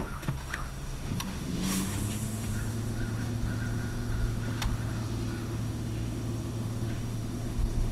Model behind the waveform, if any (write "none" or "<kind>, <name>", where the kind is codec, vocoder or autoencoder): autoencoder, DAC-VAE